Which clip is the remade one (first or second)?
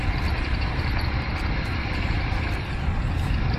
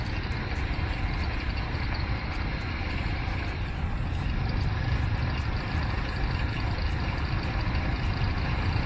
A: first